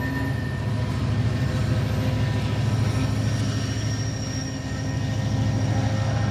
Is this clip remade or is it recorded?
recorded